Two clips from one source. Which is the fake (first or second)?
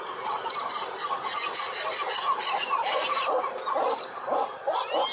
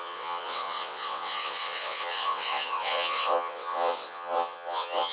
second